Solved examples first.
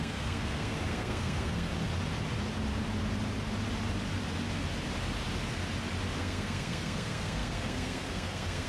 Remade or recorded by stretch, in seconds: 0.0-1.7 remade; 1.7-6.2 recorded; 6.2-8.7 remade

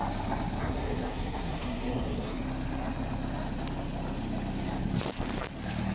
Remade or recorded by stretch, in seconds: 0.0-0.6 recorded; 0.6-2.4 remade; 2.4-5.9 recorded

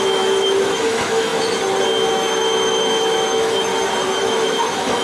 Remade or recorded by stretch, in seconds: 0.0-1.3 remade; 1.3-2.1 recorded; 2.1-3.7 remade; 3.7-4.2 recorded; 4.2-5.0 remade

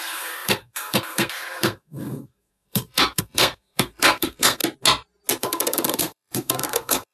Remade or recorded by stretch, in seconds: 0.0-4.6 remade; 4.6-5.4 recorded; 5.4-7.1 remade